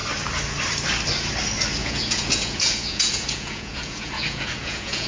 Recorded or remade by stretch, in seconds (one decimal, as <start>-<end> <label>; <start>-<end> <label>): 0.0-1.8 recorded; 1.8-5.1 remade